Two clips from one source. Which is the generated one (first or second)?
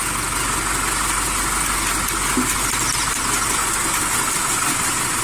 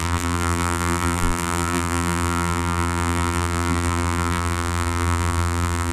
second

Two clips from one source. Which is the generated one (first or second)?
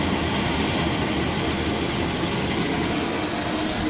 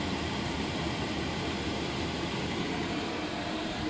second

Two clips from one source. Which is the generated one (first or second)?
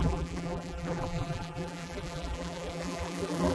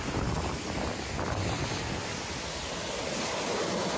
first